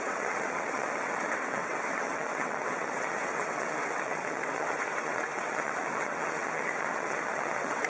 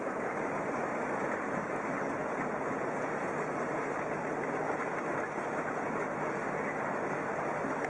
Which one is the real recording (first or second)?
second